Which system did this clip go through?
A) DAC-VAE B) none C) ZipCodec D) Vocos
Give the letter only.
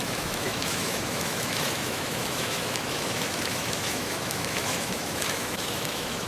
A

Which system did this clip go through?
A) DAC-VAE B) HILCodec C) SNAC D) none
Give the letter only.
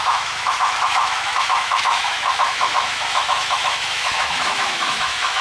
A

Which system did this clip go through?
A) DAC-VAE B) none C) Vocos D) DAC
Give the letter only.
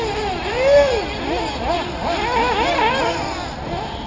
B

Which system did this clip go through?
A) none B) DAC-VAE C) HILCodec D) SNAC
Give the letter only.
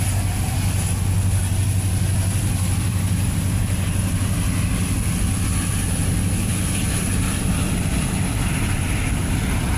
A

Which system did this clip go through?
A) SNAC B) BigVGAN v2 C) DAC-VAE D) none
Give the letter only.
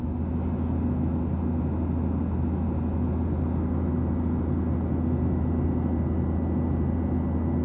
D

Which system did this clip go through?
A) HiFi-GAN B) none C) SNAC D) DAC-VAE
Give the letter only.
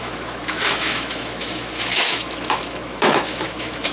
D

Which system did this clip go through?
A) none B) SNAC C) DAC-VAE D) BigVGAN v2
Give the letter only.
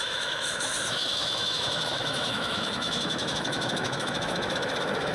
C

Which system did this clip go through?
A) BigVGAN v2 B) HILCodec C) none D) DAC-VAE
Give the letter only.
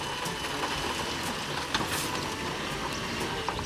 C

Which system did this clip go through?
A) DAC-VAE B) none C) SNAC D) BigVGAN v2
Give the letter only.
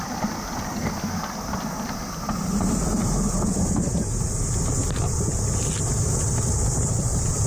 B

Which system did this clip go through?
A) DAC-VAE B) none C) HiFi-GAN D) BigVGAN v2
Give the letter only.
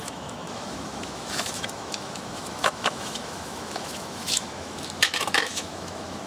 A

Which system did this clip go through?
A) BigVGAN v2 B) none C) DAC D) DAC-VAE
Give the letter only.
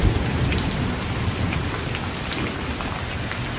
B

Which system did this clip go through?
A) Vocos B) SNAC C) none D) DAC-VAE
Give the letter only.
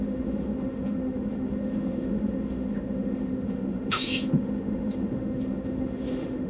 D